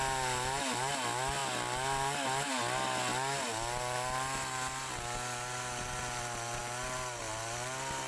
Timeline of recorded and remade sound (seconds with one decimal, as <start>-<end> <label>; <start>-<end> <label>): 0.0-8.1 recorded

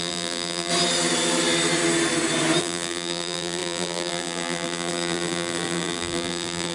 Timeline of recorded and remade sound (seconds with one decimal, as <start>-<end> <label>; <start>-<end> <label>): 0.0-0.7 remade; 0.7-2.6 recorded; 2.6-6.7 remade

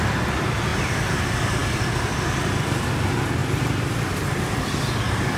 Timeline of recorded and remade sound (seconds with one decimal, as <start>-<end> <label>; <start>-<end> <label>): 0.0-0.7 recorded; 0.7-1.2 remade; 1.2-3.4 recorded; 3.4-4.0 remade; 4.0-5.4 recorded

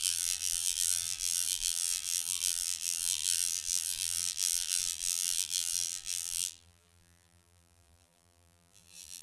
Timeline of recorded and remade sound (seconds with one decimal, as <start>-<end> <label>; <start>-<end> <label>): 0.0-9.2 remade

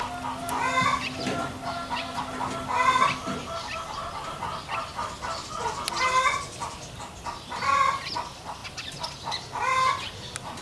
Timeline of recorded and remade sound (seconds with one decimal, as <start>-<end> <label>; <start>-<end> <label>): 0.0-0.9 recorded; 0.9-2.4 remade; 2.4-4.0 recorded; 4.0-4.6 remade; 4.6-10.6 recorded

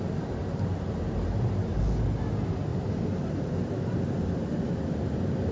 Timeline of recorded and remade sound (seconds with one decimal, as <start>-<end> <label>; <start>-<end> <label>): 0.0-0.4 recorded; 0.4-1.8 remade; 1.8-2.7 recorded; 2.7-4.0 remade; 4.0-5.5 recorded

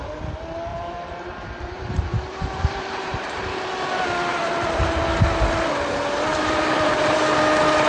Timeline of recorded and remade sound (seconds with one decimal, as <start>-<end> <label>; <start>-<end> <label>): 0.0-0.7 recorded; 0.7-3.4 remade; 3.4-4.3 recorded; 4.3-5.0 remade; 5.0-6.3 recorded; 6.3-7.2 remade; 7.2-7.9 recorded